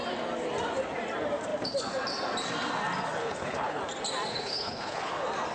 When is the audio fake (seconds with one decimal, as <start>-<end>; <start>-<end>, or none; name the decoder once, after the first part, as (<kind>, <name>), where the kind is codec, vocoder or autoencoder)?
3.2-3.8 (codec, HILCodec); 4.3-5.1